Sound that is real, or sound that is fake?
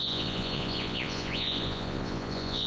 fake